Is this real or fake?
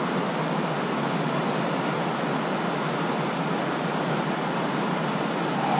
real